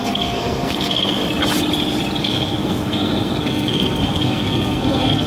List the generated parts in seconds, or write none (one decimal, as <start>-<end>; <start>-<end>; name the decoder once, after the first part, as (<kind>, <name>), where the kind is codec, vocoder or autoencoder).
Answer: 0.0-1.2 (codec, SNAC); 2.2-5.3